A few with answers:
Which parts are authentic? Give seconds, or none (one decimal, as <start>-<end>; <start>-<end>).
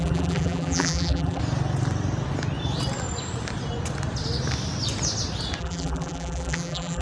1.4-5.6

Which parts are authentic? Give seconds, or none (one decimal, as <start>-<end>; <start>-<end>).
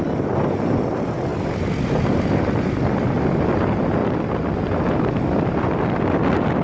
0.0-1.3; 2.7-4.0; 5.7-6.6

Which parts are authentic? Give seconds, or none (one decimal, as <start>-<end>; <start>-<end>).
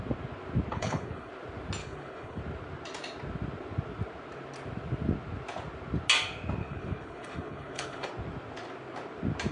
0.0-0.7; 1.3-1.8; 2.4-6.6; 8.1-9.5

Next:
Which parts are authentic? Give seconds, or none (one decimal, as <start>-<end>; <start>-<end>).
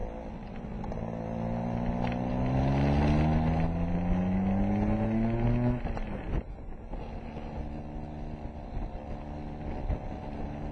0.0-10.7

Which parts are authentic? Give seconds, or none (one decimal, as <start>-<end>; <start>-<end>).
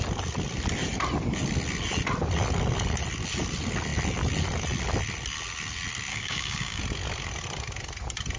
0.0-6.1; 6.8-8.4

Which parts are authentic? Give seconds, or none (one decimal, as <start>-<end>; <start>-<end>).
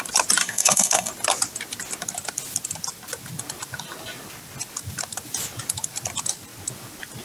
0.0-0.4; 1.1-7.2